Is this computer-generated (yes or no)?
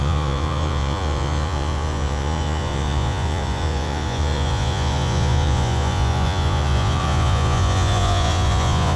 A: yes